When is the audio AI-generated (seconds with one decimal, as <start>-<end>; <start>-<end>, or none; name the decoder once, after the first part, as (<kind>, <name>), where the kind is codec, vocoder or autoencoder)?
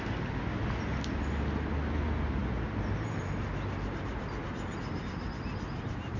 none